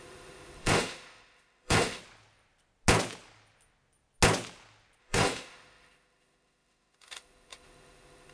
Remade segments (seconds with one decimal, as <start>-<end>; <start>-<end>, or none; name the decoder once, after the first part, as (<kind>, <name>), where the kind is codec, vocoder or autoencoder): 0.0-2.0 (autoencoder, DAC-VAE); 5.0-8.3